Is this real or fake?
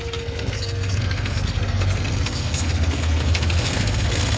fake